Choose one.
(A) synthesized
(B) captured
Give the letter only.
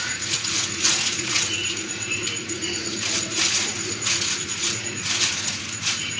A